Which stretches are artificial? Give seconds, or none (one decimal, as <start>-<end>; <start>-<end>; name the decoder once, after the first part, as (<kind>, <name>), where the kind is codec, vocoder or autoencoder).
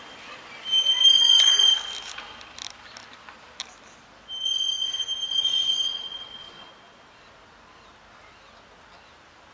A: 5.3-6.7 (vocoder, Vocos)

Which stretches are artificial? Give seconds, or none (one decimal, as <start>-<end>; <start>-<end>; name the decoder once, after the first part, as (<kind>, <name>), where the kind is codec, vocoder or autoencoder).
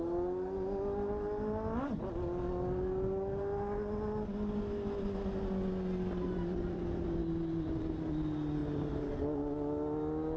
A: none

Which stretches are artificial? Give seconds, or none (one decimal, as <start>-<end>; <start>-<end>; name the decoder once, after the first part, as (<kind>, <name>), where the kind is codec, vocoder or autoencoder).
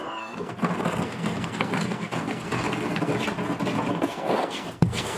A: 0.0-3.1 (codec, SNAC); 3.9-5.2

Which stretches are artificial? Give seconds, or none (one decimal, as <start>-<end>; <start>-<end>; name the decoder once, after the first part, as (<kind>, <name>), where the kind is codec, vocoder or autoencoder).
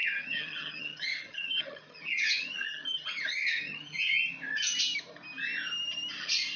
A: 0.0-4.0 (vocoder, HiFi-GAN)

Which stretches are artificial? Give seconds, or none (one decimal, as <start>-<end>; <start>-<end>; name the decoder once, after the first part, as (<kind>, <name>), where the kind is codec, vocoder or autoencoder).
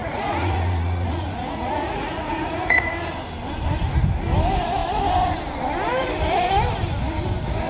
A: 0.0-2.9 (vocoder, Vocos)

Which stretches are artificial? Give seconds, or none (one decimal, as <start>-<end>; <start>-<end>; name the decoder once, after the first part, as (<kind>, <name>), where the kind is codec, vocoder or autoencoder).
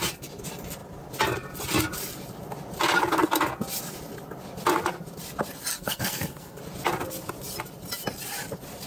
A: 5.7-6.6 (codec, SNAC)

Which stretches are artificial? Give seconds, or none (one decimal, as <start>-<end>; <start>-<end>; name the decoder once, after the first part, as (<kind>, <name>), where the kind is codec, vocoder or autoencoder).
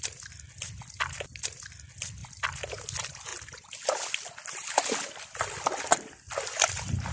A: none